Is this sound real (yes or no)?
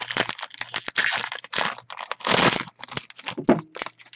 yes